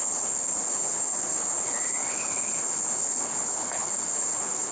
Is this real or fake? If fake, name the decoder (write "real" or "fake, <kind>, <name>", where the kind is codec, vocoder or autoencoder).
fake, codec, HILCodec